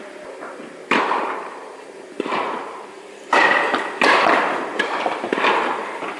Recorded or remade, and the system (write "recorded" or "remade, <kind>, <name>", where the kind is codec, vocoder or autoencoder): remade, vocoder, BigVGAN v2